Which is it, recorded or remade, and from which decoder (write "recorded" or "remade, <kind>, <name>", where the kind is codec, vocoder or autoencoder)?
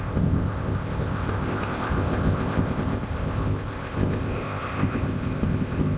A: remade, codec, ZipCodec